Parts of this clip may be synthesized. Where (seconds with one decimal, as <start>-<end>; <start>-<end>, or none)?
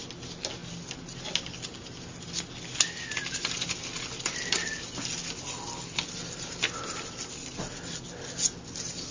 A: none